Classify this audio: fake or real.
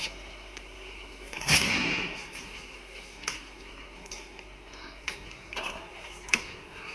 fake